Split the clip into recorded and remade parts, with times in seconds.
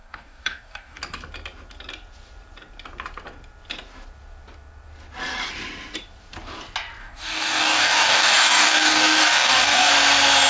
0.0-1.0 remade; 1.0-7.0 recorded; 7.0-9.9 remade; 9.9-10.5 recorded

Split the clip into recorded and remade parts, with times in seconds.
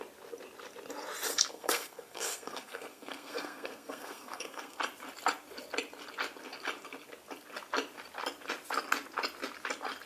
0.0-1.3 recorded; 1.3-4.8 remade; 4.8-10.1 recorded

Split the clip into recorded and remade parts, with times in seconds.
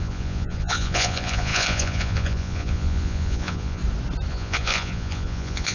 0.0-3.8 remade; 3.8-4.3 recorded; 4.3-5.7 remade